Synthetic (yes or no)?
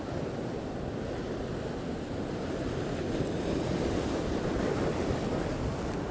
no